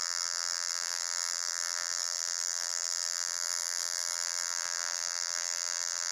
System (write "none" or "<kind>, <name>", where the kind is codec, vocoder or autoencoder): vocoder, BigVGAN v2